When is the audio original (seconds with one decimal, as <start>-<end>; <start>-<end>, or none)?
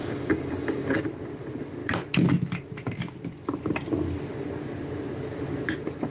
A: 1.0-6.1